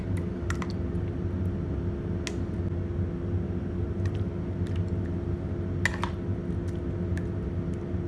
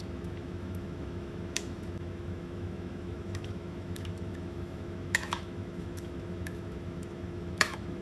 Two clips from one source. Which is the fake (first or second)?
second